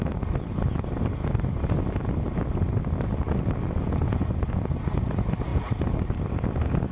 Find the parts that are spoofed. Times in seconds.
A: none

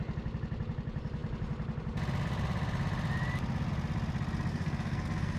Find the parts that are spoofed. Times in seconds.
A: 4.5-5.4

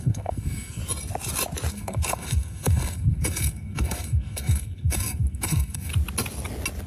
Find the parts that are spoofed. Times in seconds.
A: 0.0-0.8; 1.7-5.9

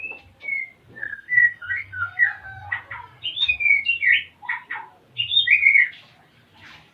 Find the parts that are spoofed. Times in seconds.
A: 1.0-2.2